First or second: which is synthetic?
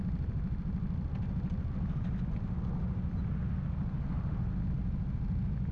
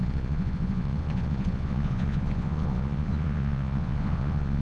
second